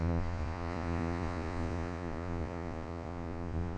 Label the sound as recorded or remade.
remade